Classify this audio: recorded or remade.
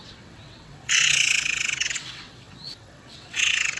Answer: remade